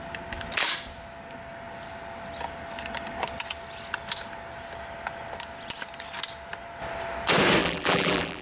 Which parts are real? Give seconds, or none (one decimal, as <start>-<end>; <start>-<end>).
0.0-7.6

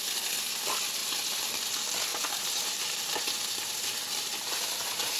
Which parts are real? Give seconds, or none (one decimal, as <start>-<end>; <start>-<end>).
0.0-2.1

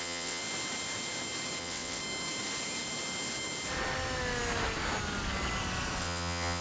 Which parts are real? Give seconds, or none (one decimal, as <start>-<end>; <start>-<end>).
0.4-1.6; 2.0-6.0

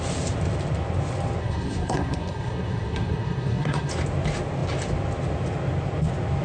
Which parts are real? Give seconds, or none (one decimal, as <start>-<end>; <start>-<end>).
0.0-1.4; 3.9-6.4

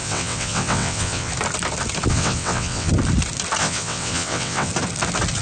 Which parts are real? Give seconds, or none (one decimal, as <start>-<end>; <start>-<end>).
1.3-2.1; 2.9-3.6; 4.7-5.4